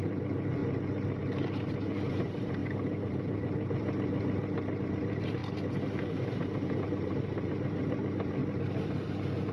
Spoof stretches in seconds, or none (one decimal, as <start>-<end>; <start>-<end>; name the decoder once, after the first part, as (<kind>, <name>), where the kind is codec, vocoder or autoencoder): 0.0-0.6 (vocoder, BigVGAN v2); 1.2-5.4; 6.0-8.4

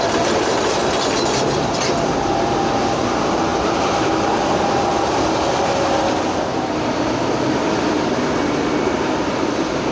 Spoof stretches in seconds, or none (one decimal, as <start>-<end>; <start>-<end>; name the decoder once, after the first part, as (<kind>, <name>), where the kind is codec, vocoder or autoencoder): 0.0-9.9 (vocoder, BigVGAN v2)

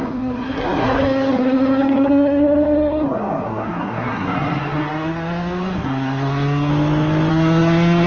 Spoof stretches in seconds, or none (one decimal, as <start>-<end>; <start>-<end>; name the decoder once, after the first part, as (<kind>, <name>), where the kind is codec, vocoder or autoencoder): 0.0-6.7 (codec, SNAC); 7.3-8.1

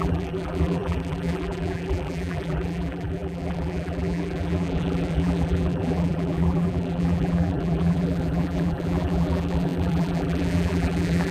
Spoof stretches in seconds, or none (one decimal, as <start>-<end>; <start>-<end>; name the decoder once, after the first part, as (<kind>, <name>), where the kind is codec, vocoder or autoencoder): 0.0-11.3 (vocoder, BigVGAN v2)

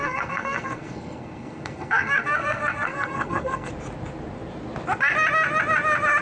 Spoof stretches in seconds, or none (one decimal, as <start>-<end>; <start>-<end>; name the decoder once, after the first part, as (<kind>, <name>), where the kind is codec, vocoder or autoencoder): 0.0-3.7 (codec, SNAC)

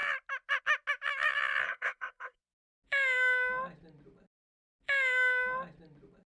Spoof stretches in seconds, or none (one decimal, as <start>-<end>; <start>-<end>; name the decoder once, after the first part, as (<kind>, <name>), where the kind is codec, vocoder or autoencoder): 1.6-2.4 (codec, SNAC)

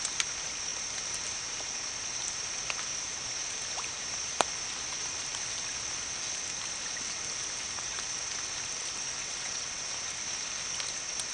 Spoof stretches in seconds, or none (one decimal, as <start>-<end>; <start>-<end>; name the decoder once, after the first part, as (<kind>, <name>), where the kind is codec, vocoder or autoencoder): 9.2-9.8 (vocoder, WaveNeXt)